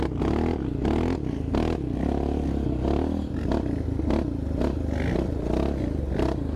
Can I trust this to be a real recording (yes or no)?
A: yes